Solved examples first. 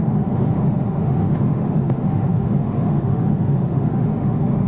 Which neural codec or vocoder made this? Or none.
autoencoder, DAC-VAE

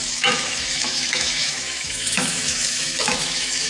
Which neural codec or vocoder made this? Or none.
autoencoder, DAC-VAE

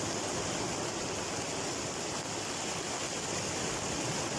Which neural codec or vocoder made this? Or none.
none